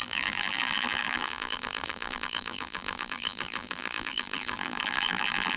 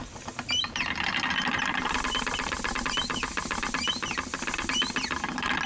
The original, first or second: second